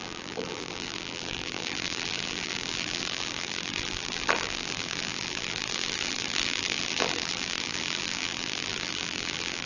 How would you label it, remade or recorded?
remade